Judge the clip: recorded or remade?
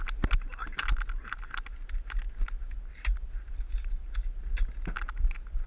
recorded